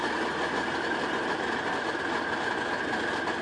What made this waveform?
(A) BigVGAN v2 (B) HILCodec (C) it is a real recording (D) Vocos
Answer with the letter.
C